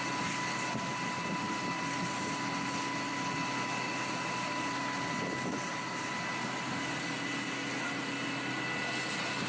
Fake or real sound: real